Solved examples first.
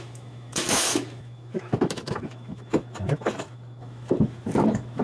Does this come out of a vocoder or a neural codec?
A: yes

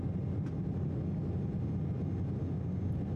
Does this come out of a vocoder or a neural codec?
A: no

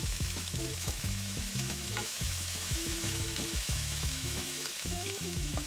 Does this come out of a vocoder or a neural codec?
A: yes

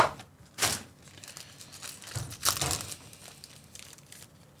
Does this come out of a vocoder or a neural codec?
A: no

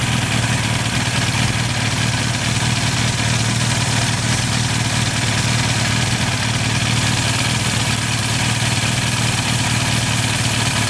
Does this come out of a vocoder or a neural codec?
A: no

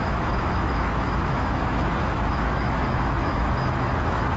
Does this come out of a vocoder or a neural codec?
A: yes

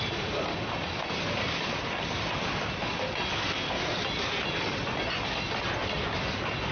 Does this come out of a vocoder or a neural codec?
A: no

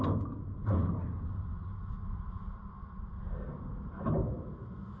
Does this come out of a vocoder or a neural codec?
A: no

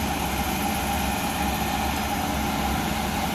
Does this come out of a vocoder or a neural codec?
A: no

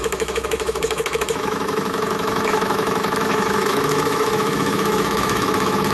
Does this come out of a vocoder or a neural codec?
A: yes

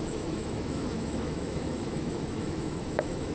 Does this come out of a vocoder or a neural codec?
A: yes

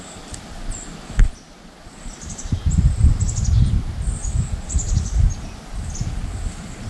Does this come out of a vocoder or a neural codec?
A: no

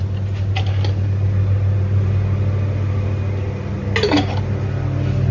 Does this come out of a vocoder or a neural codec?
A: no